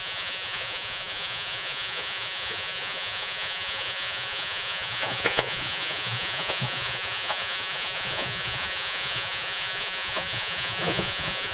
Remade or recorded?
remade